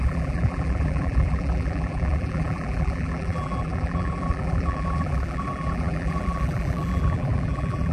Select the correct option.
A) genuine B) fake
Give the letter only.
B